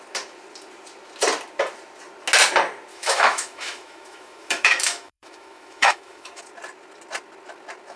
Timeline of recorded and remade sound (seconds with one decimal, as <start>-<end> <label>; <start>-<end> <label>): 0.0-2.9 recorded; 2.9-6.4 remade; 6.4-8.0 recorded